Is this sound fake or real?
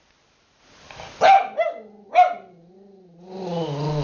real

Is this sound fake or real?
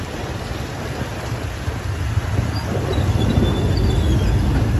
real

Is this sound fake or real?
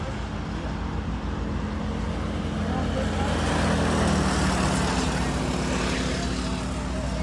real